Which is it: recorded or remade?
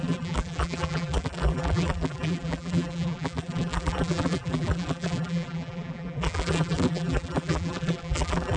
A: remade